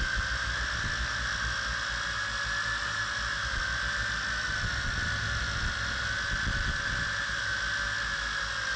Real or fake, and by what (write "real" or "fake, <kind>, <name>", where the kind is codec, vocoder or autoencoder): real